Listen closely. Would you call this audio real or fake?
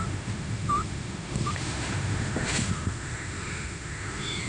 fake